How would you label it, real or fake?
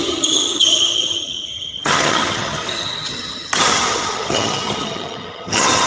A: fake